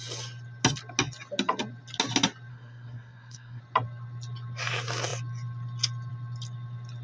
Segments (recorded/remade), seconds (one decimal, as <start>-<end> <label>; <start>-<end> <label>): 0.0-2.5 recorded; 2.5-3.6 remade; 3.6-7.0 recorded